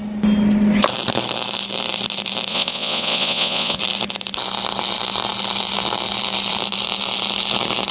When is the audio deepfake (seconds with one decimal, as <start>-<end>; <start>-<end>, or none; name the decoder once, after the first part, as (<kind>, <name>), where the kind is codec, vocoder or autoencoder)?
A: 2.5-3.8 (vocoder, Vocos)

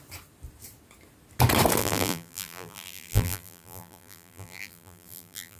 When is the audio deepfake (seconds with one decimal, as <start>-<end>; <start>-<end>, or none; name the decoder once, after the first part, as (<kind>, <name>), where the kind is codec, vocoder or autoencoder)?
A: 1.8-5.6 (vocoder, BigVGAN v2)